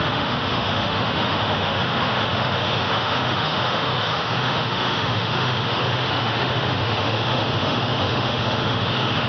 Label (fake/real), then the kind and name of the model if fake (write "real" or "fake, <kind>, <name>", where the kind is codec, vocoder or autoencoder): fake, autoencoder, DAC-VAE